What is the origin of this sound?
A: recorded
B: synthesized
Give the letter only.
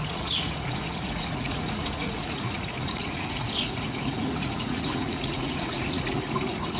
B